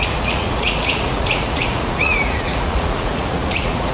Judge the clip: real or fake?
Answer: fake